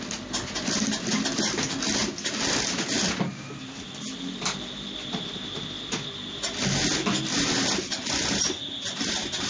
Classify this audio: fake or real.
real